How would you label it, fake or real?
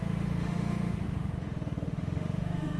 fake